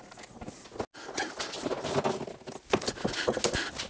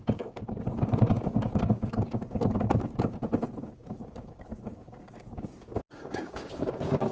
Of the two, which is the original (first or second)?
first